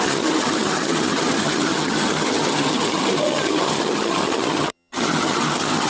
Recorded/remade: remade